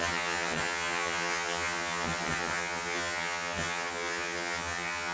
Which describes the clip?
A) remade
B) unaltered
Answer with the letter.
A